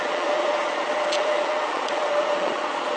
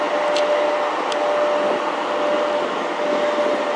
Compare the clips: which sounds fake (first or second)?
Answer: first